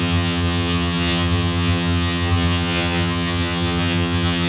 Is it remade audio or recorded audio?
remade